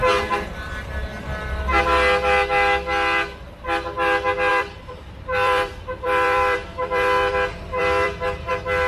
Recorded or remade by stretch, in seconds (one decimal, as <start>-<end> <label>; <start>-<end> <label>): 0.0-4.5 recorded; 4.5-8.5 remade; 8.5-8.9 recorded